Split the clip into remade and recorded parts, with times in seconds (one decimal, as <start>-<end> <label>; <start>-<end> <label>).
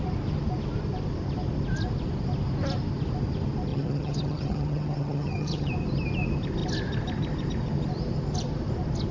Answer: 0.0-3.7 recorded; 3.7-5.7 remade; 5.7-9.1 recorded